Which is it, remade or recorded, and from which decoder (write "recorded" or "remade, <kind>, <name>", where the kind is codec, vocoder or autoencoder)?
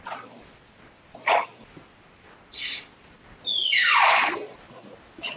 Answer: recorded